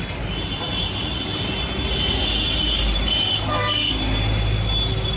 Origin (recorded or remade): recorded